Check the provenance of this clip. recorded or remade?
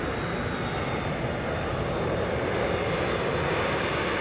recorded